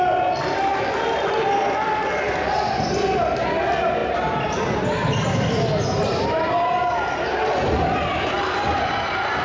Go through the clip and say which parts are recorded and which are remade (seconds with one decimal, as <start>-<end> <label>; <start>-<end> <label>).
0.0-9.4 recorded